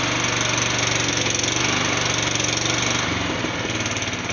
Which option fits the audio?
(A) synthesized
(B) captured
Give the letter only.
B